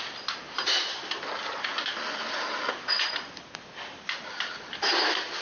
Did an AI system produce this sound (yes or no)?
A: no